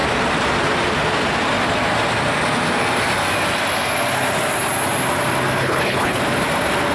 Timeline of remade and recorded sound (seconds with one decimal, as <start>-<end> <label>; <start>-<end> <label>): 0.0-5.6 recorded; 5.6-6.2 remade; 6.2-6.9 recorded

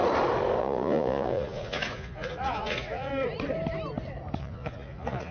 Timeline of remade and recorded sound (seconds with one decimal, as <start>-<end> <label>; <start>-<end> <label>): 0.0-0.6 recorded; 0.6-3.1 remade; 3.1-4.4 recorded; 4.4-5.3 remade

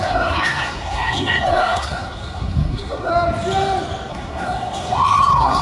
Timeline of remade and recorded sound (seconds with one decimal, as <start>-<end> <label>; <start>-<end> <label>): 0.0-3.1 remade; 3.1-4.1 recorded; 4.1-5.6 remade

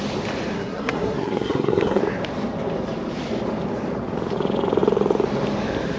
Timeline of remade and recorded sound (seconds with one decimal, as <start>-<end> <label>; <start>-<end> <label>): 0.0-0.5 recorded; 0.5-2.0 remade; 2.0-6.0 recorded

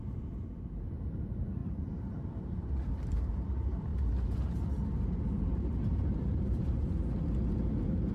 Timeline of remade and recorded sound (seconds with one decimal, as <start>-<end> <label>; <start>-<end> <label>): 0.0-3.9 remade; 3.9-5.1 recorded; 5.1-6.8 remade; 6.8-8.1 recorded

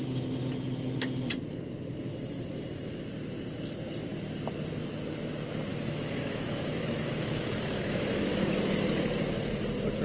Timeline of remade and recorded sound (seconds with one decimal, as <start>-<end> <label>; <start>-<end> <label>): 0.0-2.1 recorded; 2.1-3.0 remade; 3.0-5.7 recorded; 5.7-8.6 remade; 8.6-10.0 recorded

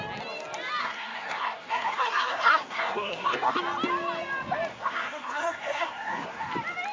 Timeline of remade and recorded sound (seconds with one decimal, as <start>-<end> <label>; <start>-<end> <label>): 0.0-0.8 recorded; 0.8-3.6 remade; 3.6-4.7 recorded; 4.7-6.5 remade; 6.5-6.9 recorded